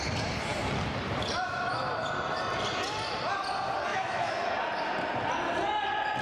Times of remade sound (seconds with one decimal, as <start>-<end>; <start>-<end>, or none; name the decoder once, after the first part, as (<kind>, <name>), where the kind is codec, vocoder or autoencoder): 3.9-4.5 (autoencoder, DAC-VAE)